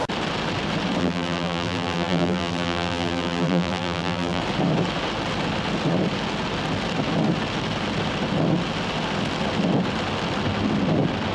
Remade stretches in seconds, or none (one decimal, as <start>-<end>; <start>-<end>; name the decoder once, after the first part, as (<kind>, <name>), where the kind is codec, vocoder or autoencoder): 1.0-4.4 (vocoder, BigVGAN v2)